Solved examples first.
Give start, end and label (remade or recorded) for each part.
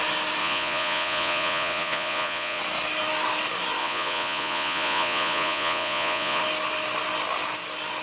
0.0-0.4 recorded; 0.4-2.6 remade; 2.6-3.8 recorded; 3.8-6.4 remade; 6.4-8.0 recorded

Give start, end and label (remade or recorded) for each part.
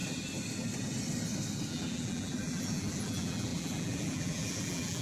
0.0-1.7 recorded; 1.7-5.0 remade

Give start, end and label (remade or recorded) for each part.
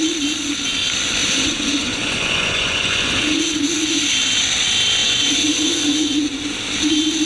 0.0-1.2 recorded; 1.2-4.0 remade; 4.0-5.0 recorded; 5.0-6.5 remade; 6.5-7.3 recorded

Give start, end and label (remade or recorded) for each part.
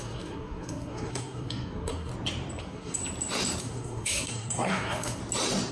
0.0-2.1 remade; 2.1-2.6 recorded; 2.6-3.0 remade; 3.0-3.6 recorded; 3.6-5.2 remade; 5.2-5.7 recorded